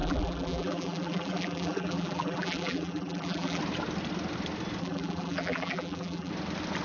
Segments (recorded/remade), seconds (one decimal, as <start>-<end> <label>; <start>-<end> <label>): 0.0-3.6 remade; 3.6-4.8 recorded; 4.8-6.3 remade; 6.3-6.8 recorded